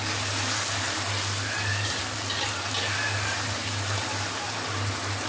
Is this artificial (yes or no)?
no